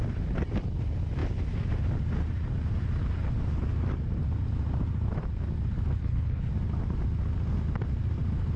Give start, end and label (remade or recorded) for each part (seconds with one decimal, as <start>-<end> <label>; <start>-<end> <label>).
0.0-6.0 recorded; 6.0-6.5 remade; 6.5-8.6 recorded